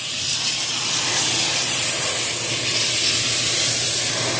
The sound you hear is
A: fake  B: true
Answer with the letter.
B